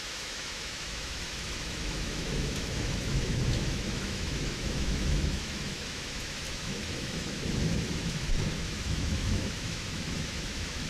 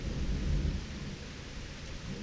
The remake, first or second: first